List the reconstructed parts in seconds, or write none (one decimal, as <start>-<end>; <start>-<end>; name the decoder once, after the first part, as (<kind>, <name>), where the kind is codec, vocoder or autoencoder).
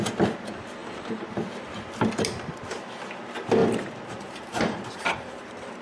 0.8-1.3 (vocoder, BigVGAN v2); 3.6-5.8